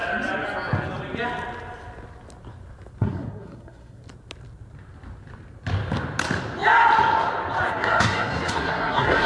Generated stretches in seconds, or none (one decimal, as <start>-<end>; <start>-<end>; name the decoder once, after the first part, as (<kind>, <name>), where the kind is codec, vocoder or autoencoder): 3.0-4.0 (codec, SNAC); 7.7-9.3